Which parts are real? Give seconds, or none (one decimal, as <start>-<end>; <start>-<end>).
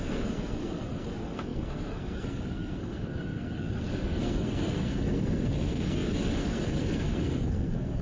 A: none